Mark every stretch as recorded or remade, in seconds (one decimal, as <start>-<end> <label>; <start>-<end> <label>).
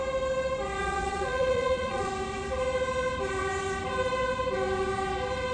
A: 0.0-0.8 recorded; 0.8-2.1 remade; 2.1-5.5 recorded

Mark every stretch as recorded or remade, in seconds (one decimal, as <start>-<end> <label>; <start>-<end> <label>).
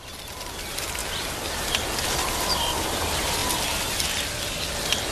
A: 0.0-1.0 recorded; 1.0-1.8 remade; 1.8-5.1 recorded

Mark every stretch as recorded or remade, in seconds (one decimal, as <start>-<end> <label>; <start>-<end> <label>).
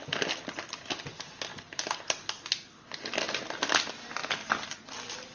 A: 0.0-5.3 recorded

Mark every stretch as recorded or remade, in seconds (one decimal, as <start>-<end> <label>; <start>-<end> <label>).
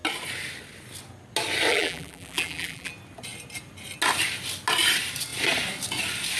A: 0.0-1.7 recorded; 1.7-2.9 remade; 2.9-6.4 recorded